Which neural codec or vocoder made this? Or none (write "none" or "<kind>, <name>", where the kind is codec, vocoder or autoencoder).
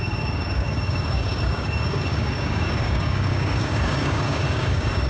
codec, DAC